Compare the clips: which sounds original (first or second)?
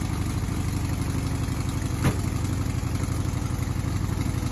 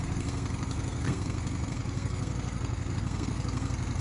first